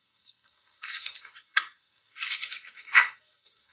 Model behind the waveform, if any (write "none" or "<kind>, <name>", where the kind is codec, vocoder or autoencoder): codec, SNAC